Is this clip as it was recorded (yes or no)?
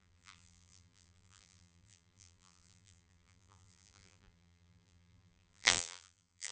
no